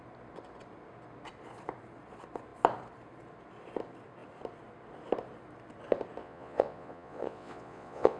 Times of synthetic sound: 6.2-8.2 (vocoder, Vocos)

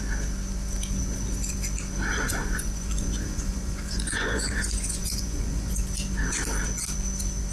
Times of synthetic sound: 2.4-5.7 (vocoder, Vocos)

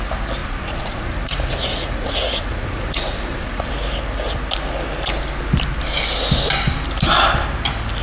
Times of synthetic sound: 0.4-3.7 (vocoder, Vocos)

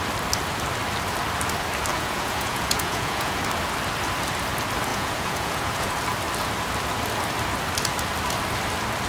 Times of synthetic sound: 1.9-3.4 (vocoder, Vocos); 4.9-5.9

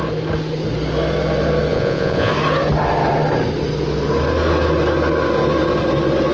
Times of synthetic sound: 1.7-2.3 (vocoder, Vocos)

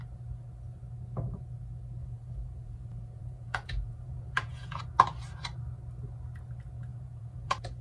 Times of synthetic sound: 2.0-4.8 (vocoder, Vocos); 6.9-7.8